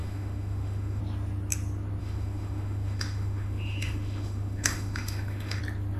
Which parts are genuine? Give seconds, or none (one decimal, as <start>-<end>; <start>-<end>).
1.0-2.0; 5.6-6.0